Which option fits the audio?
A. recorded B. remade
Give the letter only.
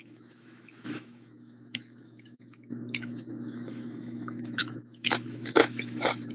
B